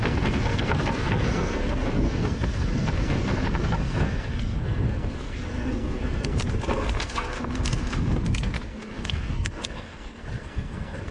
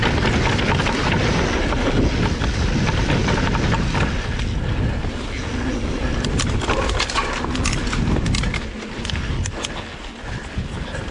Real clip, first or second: second